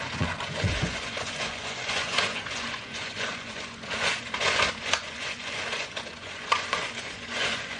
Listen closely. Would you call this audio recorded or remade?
remade